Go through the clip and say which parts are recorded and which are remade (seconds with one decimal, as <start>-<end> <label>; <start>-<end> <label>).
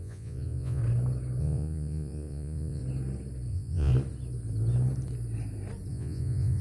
0.0-0.8 remade; 0.8-1.4 recorded; 1.4-2.8 remade; 2.8-3.5 recorded; 3.5-3.9 remade; 3.9-5.9 recorded; 5.9-6.6 remade